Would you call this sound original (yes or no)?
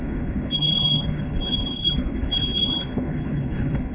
no